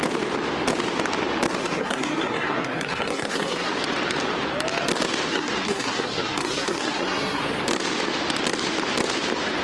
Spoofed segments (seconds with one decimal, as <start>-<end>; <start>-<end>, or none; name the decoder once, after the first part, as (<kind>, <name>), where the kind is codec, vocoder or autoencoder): 1.6-3.7 (codec, SNAC); 5.3-7.4